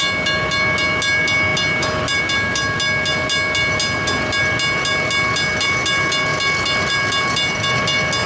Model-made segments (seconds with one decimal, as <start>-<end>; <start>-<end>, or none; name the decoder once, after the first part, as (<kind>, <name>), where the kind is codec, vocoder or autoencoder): none